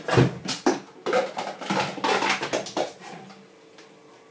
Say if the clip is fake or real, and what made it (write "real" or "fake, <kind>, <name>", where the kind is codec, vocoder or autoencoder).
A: real